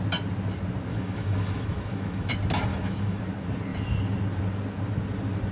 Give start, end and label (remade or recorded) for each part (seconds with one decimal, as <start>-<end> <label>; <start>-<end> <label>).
0.0-0.9 recorded; 0.9-2.3 remade; 2.3-2.7 recorded; 2.7-3.2 remade; 3.2-5.5 recorded